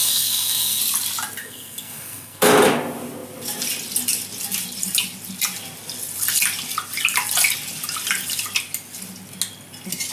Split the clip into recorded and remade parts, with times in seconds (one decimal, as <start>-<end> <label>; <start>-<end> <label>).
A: 0.0-0.8 remade; 0.8-1.4 recorded; 1.4-2.5 remade; 2.5-10.1 recorded

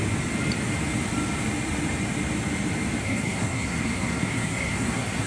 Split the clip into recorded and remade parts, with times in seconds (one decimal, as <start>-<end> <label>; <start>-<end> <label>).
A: 0.0-3.0 recorded; 3.0-5.3 remade